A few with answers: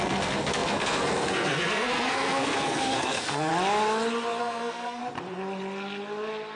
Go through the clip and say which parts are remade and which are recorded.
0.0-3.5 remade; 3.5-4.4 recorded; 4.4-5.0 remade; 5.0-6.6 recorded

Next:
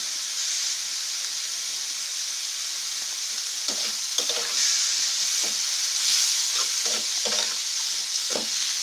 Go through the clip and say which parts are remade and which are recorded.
0.0-8.1 recorded; 8.1-8.8 remade

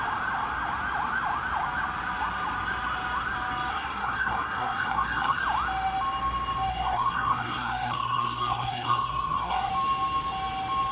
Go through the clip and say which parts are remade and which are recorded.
0.0-3.7 recorded; 3.7-5.4 remade; 5.4-6.7 recorded; 6.7-9.7 remade; 9.7-10.9 recorded

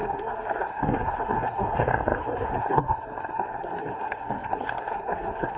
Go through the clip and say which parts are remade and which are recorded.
0.0-5.6 remade

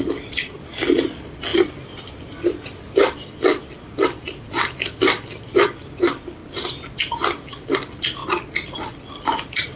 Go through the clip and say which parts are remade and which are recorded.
0.0-9.8 recorded

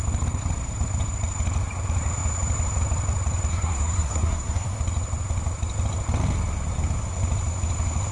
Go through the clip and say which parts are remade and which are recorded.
0.0-3.5 recorded; 3.5-4.8 remade; 4.8-8.1 recorded